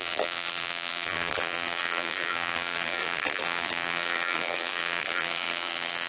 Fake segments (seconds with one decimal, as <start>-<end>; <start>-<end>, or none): 0.0-6.1